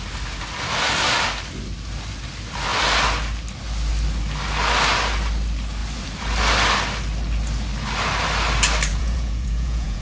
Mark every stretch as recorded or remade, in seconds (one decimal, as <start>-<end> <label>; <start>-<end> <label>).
0.0-8.9 recorded; 8.9-10.0 remade